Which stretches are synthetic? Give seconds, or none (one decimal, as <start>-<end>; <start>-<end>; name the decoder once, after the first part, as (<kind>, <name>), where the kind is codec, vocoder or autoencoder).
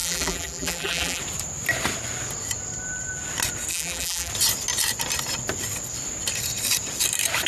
0.0-1.2 (vocoder, BigVGAN v2); 3.7-4.3